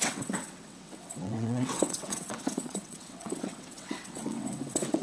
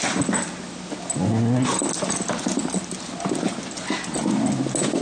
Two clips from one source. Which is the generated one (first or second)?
first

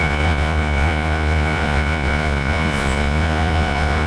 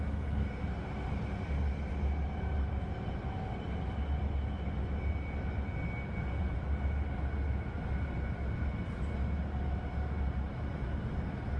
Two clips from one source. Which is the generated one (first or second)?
first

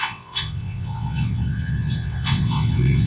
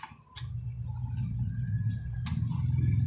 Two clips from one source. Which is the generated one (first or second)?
first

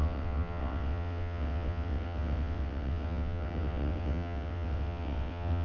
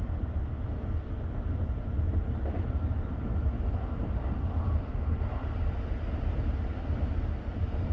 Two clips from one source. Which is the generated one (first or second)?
first